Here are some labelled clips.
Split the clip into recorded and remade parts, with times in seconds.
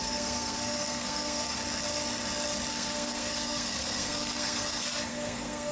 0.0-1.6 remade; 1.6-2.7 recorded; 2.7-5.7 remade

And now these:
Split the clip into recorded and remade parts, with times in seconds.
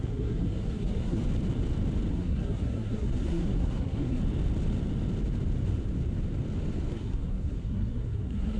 0.0-1.2 remade; 1.2-2.1 recorded; 2.1-4.2 remade; 4.2-6.9 recorded; 6.9-8.6 remade